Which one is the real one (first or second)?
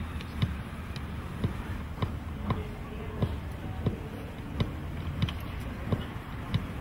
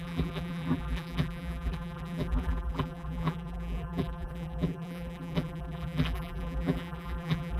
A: first